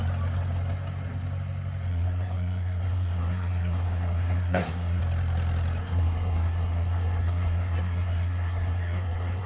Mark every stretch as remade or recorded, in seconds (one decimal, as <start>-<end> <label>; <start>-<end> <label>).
0.0-1.9 recorded; 1.9-5.0 remade; 5.0-5.8 recorded; 5.8-9.5 remade